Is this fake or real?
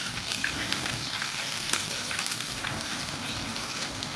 fake